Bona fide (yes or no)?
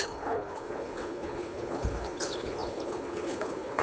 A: no